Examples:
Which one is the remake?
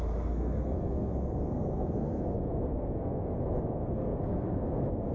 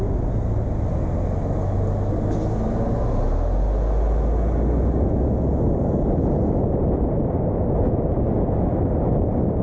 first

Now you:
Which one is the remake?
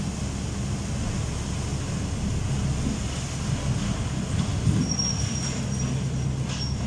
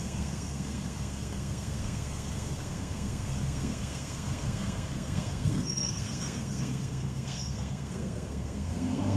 second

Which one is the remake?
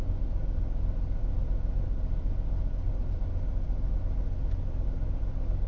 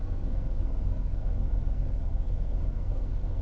second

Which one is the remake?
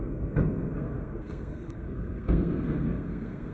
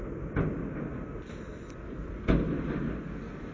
first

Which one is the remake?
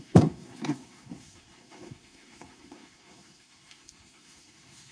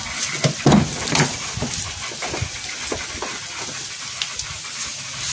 first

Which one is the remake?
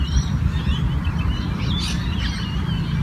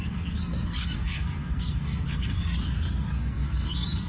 second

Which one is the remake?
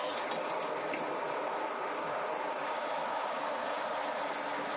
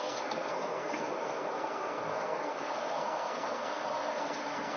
second